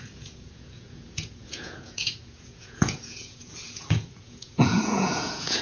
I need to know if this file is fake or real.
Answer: fake